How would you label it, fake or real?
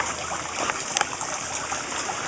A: real